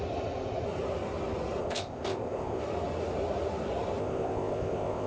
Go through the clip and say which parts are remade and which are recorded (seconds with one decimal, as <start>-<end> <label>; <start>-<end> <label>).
0.0-1.6 recorded; 1.6-2.6 remade; 2.6-4.0 recorded; 4.0-5.1 remade